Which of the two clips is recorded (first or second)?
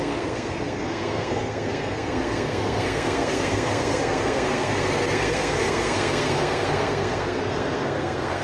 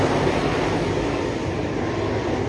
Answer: second